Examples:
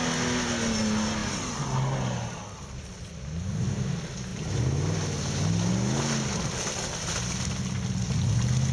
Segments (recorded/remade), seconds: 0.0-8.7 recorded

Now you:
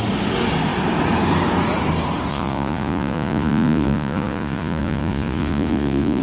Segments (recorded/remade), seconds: 0.0-2.3 recorded; 2.3-6.2 remade

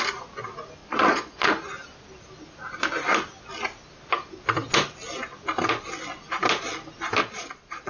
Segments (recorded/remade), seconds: 0.0-0.8 recorded; 0.8-1.5 remade; 1.5-7.2 recorded; 7.2-7.9 remade

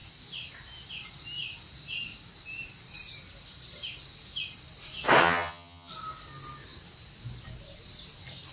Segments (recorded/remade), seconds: 0.0-5.2 recorded; 5.2-5.9 remade; 5.9-8.5 recorded

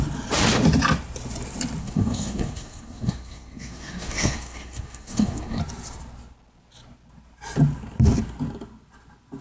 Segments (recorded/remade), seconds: 0.0-1.8 recorded; 1.8-5.6 remade; 5.6-9.4 recorded